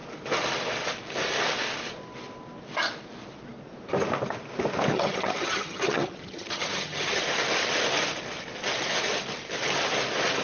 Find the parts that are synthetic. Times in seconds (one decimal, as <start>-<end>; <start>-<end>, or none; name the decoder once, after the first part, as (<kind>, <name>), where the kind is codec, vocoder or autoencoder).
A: 4.9-7.2 (vocoder, HiFi-GAN)